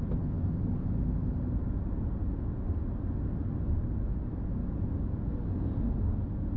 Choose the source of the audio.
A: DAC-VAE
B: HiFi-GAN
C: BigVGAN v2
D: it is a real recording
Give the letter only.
D